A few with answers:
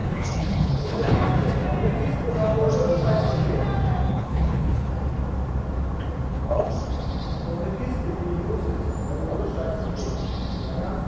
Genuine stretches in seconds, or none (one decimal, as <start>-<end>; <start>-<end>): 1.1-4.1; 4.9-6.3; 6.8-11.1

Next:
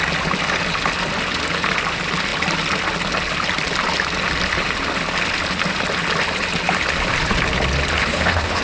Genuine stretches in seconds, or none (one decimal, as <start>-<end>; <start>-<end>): 0.0-8.0

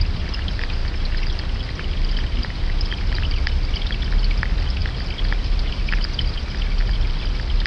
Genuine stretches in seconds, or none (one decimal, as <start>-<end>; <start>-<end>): 0.0-7.7

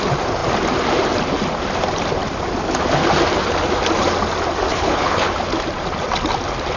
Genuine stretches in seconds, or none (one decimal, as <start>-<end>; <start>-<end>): 0.0-4.7; 5.3-6.8

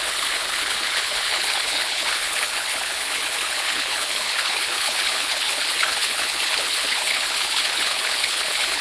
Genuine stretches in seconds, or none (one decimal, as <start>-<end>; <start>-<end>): none